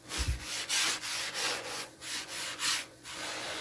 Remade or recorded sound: remade